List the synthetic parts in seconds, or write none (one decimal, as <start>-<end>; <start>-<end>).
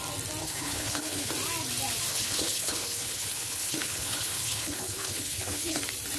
0.4-1.3; 2.1-5.8